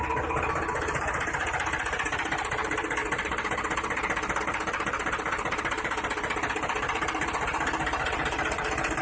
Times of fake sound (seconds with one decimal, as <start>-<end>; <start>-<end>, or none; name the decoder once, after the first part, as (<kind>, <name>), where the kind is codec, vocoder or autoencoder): 0.0-9.0 (vocoder, BigVGAN v2)